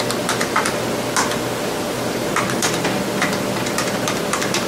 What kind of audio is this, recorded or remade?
recorded